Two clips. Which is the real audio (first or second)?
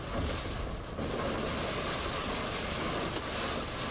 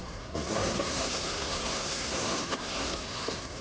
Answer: first